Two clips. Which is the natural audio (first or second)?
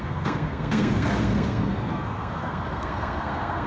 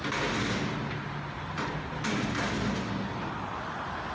second